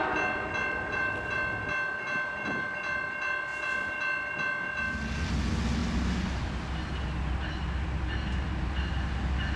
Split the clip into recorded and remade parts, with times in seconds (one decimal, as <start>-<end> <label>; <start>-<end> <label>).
0.0-9.6 recorded